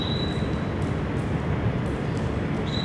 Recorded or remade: recorded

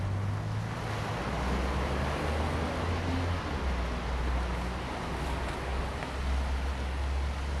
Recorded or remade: recorded